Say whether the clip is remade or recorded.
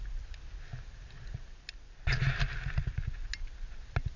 recorded